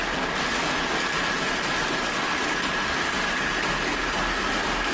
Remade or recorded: recorded